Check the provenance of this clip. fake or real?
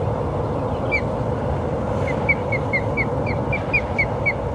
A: real